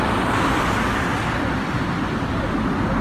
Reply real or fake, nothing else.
real